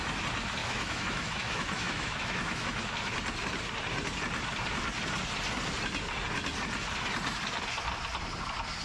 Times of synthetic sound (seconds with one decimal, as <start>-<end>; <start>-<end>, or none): 0.6-2.8